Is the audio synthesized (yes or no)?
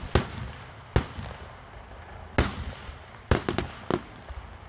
no